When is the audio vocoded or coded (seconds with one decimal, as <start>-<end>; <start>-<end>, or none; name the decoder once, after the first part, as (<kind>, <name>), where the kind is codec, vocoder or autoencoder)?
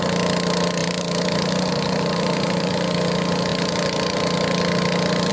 0.8-2.7 (vocoder, BigVGAN v2)